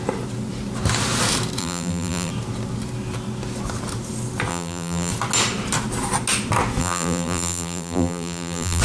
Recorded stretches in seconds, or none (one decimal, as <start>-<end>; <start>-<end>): 0.0-1.6; 2.3-4.5; 5.1-6.8